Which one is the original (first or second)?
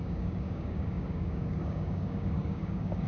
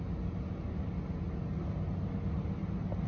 second